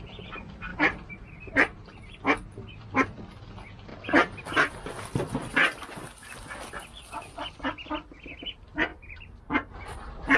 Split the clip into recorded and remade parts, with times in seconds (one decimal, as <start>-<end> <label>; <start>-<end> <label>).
0.0-0.7 recorded; 0.7-2.2 remade; 2.2-8.9 recorded; 8.9-10.4 remade

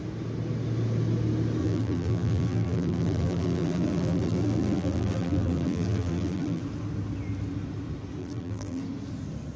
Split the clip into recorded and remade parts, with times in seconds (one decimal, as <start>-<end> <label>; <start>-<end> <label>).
0.0-1.6 recorded; 1.6-6.6 remade; 6.6-8.2 recorded; 8.2-8.8 remade; 8.8-9.6 recorded

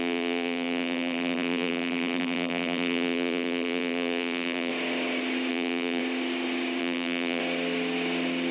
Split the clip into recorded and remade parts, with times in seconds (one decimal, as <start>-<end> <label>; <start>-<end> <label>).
0.0-4.7 remade; 4.7-5.5 recorded; 5.5-6.0 remade; 6.0-6.8 recorded; 6.8-7.4 remade; 7.4-8.5 recorded

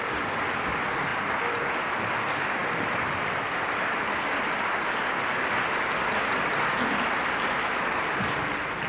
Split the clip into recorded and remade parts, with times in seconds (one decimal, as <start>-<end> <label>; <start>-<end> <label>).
0.0-8.9 recorded